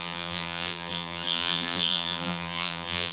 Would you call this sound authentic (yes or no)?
no